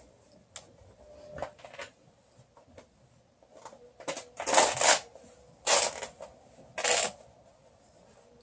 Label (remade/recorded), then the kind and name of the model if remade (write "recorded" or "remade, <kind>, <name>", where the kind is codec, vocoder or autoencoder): recorded